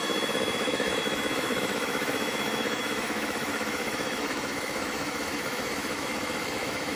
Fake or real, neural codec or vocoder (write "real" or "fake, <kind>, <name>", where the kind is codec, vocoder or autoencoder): fake, autoencoder, DAC-VAE